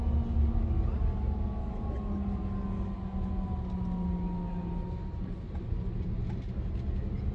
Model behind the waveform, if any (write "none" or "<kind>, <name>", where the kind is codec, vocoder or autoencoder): none